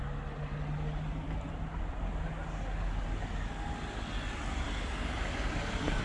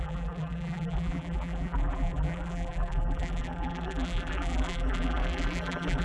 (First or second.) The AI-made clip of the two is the second